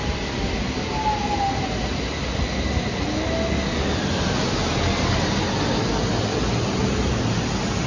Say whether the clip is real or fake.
real